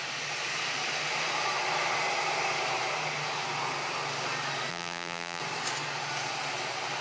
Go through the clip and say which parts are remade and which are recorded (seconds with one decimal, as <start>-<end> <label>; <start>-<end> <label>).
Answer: 0.0-4.7 recorded; 4.7-5.4 remade; 5.4-7.0 recorded